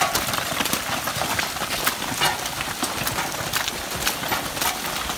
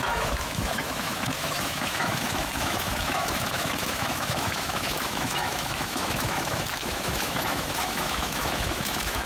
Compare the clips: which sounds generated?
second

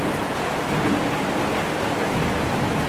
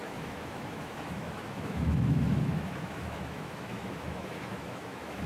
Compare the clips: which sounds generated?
second